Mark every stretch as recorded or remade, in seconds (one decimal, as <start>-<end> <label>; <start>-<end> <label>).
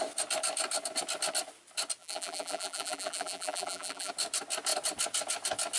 0.0-2.0 recorded; 2.0-4.1 remade; 4.1-5.8 recorded